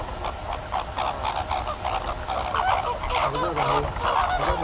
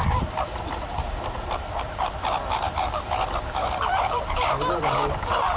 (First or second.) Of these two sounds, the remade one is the second